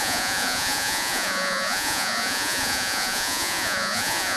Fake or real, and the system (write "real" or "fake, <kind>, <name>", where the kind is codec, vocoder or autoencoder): fake, vocoder, Vocos